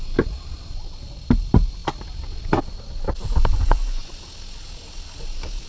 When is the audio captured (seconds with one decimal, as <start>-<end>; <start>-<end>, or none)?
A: 0.0-3.5; 4.1-5.7